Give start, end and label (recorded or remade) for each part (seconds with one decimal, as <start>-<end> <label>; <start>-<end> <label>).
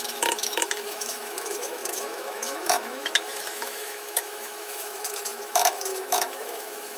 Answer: 0.0-7.0 remade